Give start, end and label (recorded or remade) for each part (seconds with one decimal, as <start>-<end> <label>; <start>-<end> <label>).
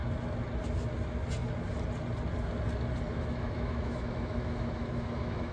0.0-3.1 recorded; 3.1-5.5 remade